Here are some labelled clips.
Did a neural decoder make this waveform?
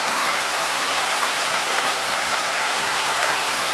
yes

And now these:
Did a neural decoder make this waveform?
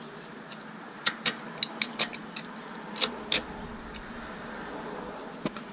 no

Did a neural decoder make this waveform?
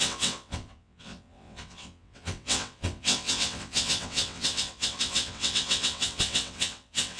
yes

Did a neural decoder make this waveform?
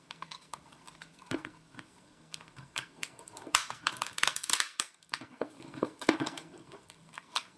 yes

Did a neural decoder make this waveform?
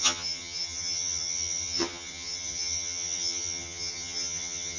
yes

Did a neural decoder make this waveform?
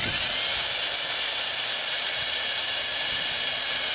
no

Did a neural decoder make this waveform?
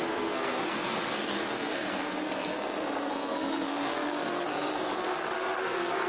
yes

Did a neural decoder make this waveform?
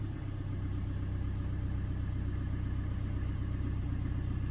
no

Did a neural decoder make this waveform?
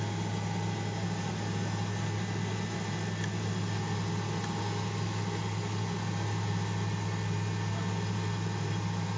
no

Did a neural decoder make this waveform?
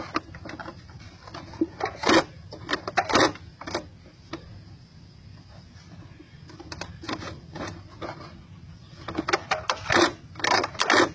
no